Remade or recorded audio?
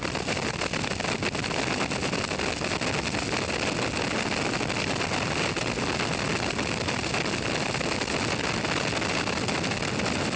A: recorded